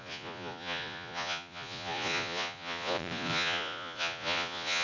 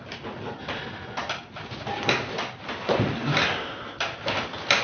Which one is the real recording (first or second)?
second